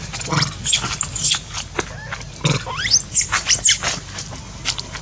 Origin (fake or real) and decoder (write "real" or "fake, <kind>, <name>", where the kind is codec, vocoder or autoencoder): real